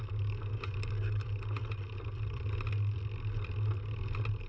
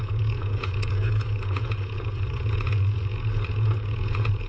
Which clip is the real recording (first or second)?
first